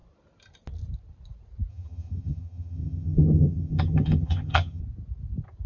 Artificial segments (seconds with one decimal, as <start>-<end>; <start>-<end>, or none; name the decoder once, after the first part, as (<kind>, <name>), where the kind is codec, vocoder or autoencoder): 1.7-4.8 (vocoder, HiFi-GAN)